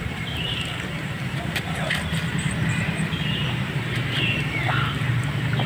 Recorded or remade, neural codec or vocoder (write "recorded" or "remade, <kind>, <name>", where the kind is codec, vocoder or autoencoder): remade, vocoder, BigVGAN v2